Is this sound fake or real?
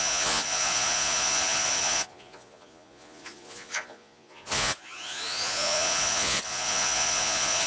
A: fake